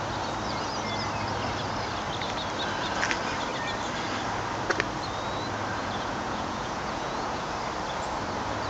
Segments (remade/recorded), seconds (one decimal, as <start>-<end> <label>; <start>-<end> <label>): 0.0-5.8 recorded; 5.8-7.5 remade; 7.5-8.7 recorded